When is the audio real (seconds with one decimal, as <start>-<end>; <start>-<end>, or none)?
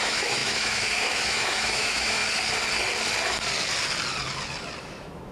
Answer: 2.2-4.8